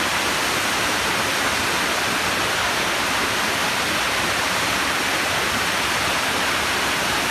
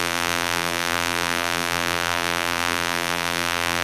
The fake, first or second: second